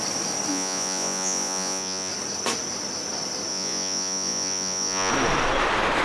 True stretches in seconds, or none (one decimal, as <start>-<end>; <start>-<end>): 0.0-0.5; 2.1-3.5; 5.1-6.0